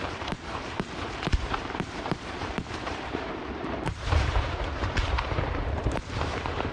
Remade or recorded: remade